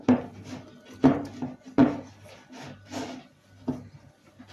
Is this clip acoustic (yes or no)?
yes